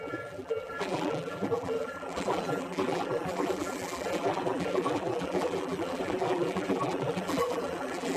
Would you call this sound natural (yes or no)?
no